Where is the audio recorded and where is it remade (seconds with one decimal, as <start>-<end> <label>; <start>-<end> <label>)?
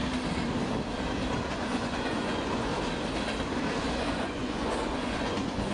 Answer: 0.0-1.5 recorded; 1.5-2.7 remade; 2.7-3.8 recorded; 3.8-5.7 remade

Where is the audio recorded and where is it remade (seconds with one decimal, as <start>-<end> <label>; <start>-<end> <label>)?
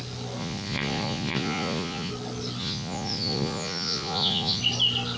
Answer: 0.0-0.4 recorded; 0.4-2.1 remade; 2.1-2.6 recorded; 2.6-4.6 remade; 4.6-5.2 recorded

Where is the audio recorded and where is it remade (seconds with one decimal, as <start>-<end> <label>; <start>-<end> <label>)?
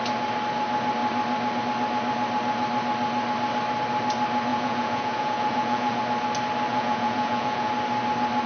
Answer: 0.0-4.5 recorded; 4.5-6.0 remade; 6.0-6.7 recorded; 6.7-7.7 remade; 7.7-8.5 recorded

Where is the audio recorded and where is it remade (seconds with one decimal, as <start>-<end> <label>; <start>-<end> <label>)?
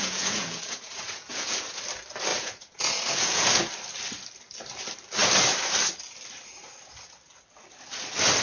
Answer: 0.0-1.8 remade; 1.8-2.3 recorded; 2.3-3.7 remade; 3.7-8.4 recorded